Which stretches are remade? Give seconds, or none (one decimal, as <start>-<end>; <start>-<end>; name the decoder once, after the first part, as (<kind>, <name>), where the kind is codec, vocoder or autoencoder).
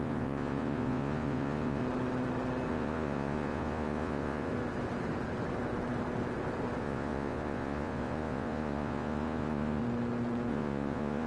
0.0-1.8 (vocoder, Vocos); 2.7-4.5; 6.8-9.8; 10.5-11.3